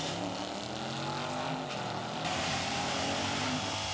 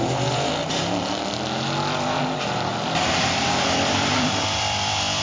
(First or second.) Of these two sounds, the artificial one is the second